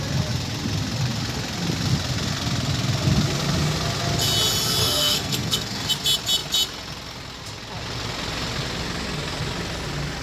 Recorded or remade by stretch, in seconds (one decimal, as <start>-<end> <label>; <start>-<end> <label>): 0.0-4.8 recorded; 4.8-5.9 remade; 5.9-10.2 recorded